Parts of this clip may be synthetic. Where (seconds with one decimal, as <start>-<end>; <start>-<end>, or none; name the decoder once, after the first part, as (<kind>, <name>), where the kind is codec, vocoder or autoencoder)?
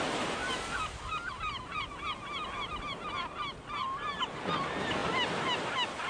none